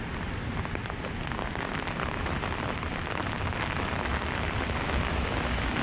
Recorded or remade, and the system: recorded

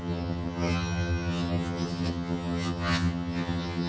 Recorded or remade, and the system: remade, vocoder, HiFi-GAN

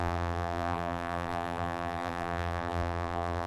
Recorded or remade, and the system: remade, vocoder, BigVGAN v2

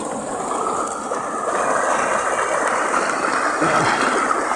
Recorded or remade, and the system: recorded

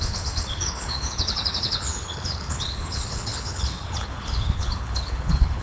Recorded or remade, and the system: remade, codec, HILCodec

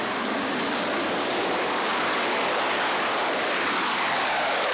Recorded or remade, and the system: remade, codec, DAC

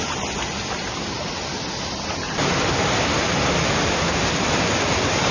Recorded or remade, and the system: recorded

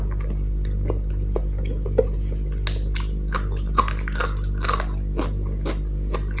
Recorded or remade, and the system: recorded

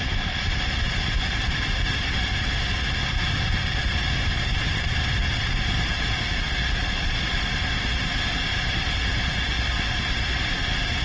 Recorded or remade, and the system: recorded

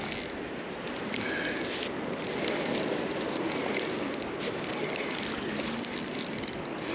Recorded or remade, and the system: recorded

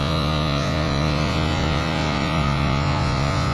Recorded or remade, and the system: remade, vocoder, Vocos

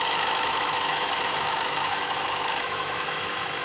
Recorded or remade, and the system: remade, autoencoder, DAC-VAE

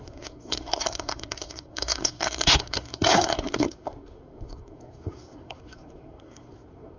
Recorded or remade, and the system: remade, codec, SNAC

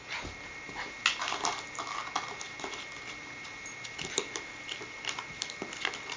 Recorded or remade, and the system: recorded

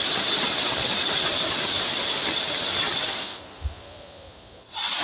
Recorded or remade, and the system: recorded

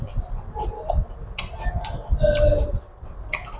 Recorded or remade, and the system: recorded